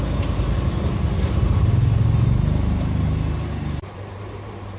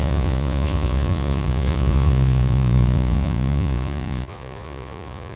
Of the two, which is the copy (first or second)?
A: second